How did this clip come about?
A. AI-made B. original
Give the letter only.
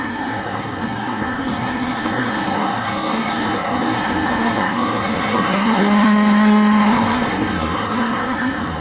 A